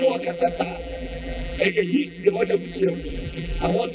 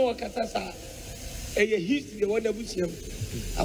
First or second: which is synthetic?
first